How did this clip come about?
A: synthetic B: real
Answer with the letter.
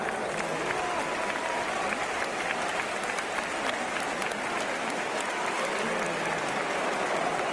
B